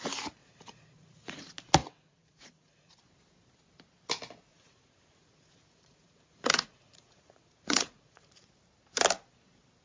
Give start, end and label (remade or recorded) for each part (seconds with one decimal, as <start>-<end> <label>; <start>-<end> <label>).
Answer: 0.0-0.4 recorded; 0.4-1.4 remade; 1.4-1.8 recorded; 1.8-3.0 remade; 3.0-4.5 recorded; 4.5-8.5 remade; 8.5-9.8 recorded